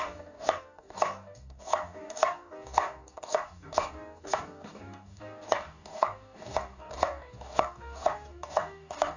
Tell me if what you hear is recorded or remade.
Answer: remade